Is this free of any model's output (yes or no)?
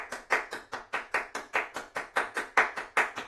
no